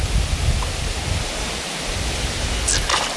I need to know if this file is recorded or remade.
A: recorded